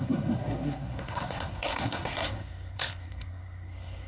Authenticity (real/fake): fake